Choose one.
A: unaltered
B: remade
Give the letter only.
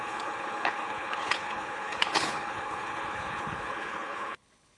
B